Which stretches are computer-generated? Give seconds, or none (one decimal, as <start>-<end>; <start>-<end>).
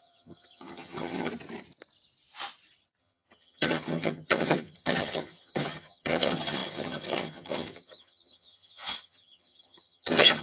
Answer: 0.0-1.3; 3.0-10.4